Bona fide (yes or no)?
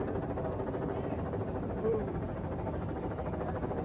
no